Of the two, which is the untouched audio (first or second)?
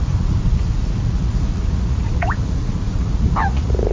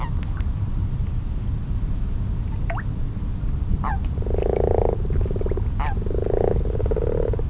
second